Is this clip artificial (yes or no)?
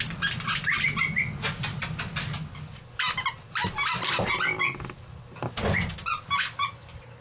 no